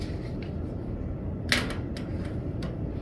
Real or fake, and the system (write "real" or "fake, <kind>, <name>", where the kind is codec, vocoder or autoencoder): real